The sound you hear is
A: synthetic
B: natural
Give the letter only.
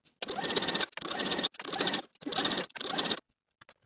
B